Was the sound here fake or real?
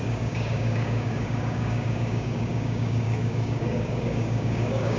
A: fake